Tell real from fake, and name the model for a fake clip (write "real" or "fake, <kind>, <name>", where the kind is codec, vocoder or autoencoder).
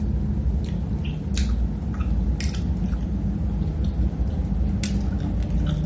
real